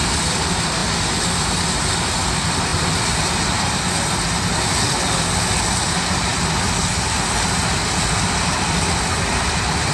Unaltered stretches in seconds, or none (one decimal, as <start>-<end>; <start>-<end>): 0.0-0.8; 1.4-9.9